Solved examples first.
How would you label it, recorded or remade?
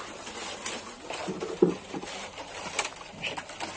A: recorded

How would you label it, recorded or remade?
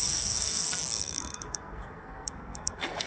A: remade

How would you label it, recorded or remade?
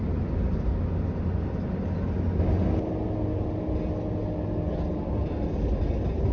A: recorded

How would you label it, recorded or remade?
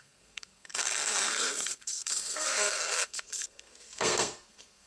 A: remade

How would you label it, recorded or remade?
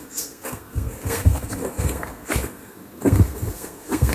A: remade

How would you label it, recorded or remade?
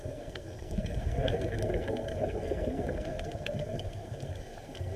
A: remade